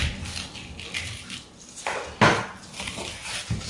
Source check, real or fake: real